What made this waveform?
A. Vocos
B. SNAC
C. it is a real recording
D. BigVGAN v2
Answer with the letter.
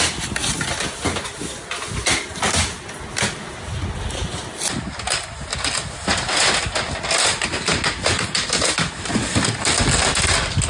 C